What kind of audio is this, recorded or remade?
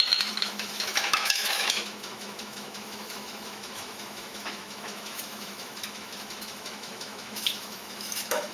remade